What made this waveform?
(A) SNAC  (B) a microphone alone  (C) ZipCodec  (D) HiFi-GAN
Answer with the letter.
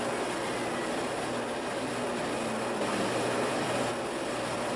B